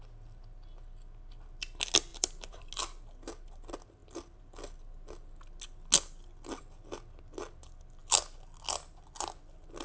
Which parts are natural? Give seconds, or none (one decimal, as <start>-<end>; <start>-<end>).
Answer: 0.0-2.1; 2.7-9.8